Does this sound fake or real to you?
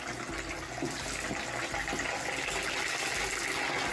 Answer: real